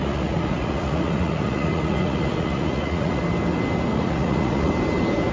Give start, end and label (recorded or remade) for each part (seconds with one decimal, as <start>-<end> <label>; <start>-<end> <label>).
0.0-3.2 remade; 3.2-3.9 recorded; 3.9-4.7 remade; 4.7-5.3 recorded